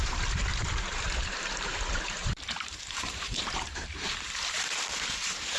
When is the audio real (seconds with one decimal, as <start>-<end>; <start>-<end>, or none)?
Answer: none